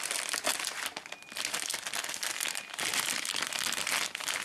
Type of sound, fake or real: real